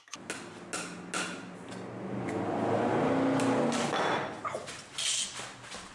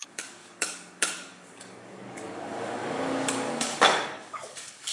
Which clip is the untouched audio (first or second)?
first